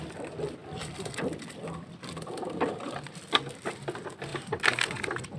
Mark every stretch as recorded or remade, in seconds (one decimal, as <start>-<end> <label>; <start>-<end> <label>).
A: 0.0-0.6 recorded; 0.6-3.3 remade; 3.3-5.4 recorded